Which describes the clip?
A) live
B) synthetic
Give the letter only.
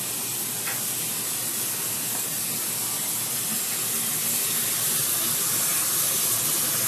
A